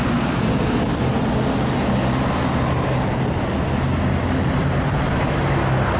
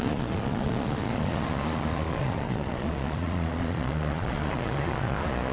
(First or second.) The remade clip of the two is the second